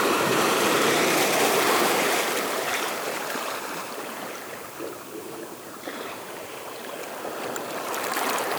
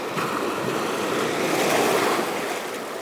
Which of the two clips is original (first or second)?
second